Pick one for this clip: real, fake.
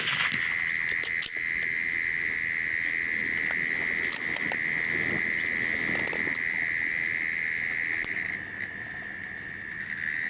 real